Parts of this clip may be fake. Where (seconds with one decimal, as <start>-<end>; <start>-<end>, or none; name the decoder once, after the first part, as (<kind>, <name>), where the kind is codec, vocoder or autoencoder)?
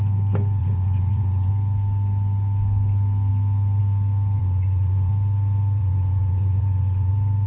0.6-1.5 (vocoder, Vocos); 4.4-5.1; 5.8-7.1